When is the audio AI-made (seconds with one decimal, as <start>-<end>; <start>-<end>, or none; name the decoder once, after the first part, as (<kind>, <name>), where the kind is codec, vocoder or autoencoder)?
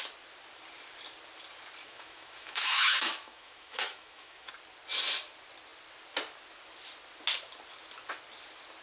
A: 1.8-4.5 (autoencoder, DAC-VAE)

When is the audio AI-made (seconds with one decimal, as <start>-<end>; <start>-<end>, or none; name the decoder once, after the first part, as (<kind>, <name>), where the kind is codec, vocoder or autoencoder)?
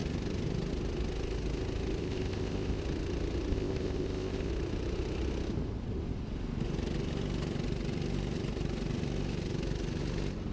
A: 2.0-2.8 (codec, ZipCodec); 3.5-4.5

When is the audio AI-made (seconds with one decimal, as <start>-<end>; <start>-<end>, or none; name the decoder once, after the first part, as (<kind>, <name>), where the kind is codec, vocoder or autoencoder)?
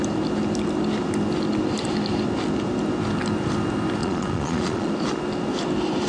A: 4.0-4.9 (vocoder, Vocos)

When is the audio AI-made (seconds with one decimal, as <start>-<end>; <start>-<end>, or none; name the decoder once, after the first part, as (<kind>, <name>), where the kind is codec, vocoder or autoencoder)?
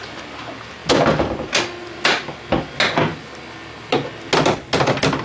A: none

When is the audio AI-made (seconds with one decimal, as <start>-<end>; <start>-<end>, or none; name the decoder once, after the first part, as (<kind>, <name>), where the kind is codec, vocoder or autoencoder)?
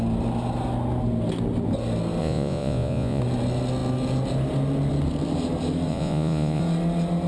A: 2.2-3.2 (vocoder, Vocos); 5.9-6.6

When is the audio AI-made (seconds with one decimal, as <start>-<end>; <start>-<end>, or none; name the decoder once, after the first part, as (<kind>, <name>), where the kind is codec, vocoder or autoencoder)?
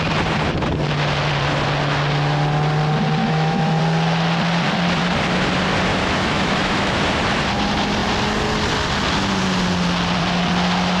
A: 3.2-3.8 (autoencoder, DAC-VAE); 5.9-7.0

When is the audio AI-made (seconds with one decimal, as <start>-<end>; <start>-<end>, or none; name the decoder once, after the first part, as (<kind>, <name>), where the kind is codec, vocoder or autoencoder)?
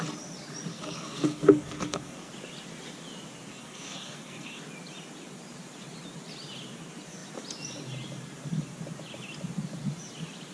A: 0.7-2.3 (codec, SNAC); 3.5-4.6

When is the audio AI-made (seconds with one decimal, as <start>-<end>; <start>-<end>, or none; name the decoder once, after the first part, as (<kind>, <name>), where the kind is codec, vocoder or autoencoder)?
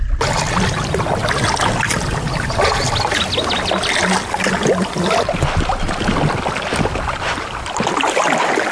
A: none